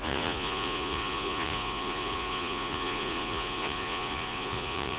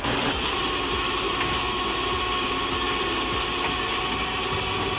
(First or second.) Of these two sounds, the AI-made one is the first